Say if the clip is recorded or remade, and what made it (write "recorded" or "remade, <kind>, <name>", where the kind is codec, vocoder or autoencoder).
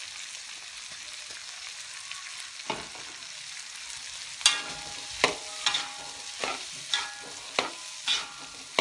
recorded